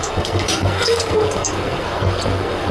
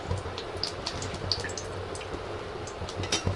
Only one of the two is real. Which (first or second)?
second